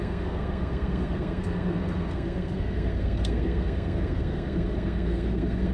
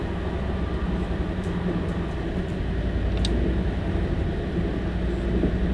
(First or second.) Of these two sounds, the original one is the second